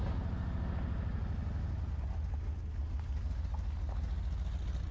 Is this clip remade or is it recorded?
recorded